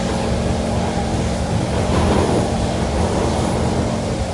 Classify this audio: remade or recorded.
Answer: recorded